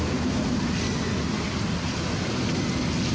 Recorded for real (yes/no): yes